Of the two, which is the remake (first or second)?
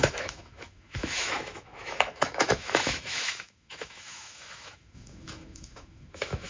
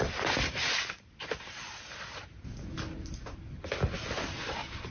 first